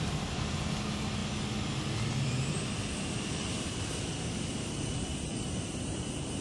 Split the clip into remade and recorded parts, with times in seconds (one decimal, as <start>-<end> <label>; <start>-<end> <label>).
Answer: 0.0-6.4 recorded